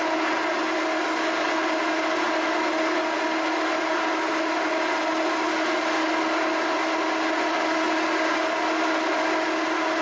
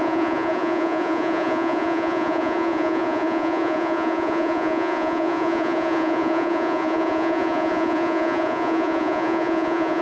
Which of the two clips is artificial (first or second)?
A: second